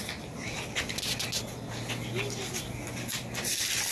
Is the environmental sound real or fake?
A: real